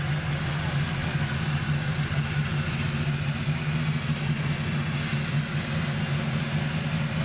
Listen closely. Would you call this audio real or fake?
real